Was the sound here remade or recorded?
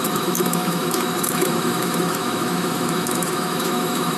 remade